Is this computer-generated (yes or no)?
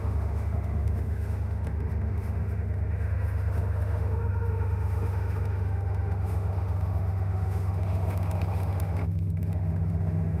yes